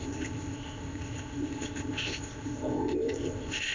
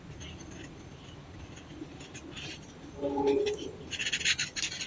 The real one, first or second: second